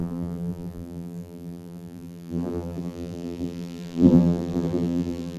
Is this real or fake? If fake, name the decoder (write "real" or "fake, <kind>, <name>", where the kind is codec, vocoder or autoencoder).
fake, vocoder, BigVGAN v2